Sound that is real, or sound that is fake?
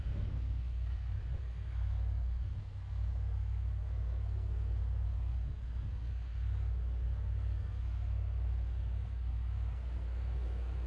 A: fake